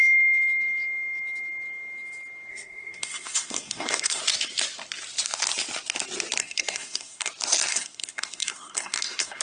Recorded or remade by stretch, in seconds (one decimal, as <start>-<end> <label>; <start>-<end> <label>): 0.0-2.5 recorded; 2.5-4.2 remade; 4.2-6.4 recorded; 6.4-7.3 remade; 7.3-7.7 recorded; 7.7-9.4 remade